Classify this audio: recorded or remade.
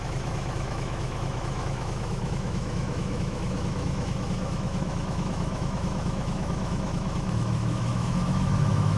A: remade